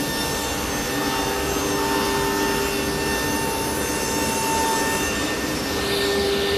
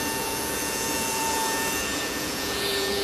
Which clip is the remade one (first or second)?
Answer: second